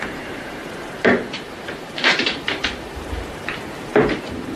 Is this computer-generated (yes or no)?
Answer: yes